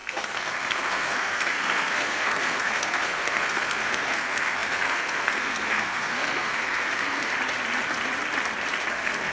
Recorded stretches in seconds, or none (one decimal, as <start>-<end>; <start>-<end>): 7.3-8.9